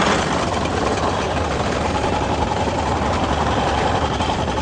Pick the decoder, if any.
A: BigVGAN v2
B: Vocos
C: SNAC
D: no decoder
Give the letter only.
A